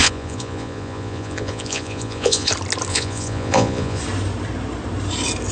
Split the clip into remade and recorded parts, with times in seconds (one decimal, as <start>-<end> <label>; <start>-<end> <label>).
0.0-2.5 remade; 2.5-2.9 recorded; 2.9-4.0 remade; 4.0-5.5 recorded